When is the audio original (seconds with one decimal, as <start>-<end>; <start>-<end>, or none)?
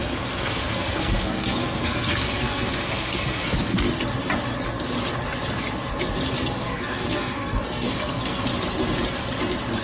4.0-6.4; 8.5-9.8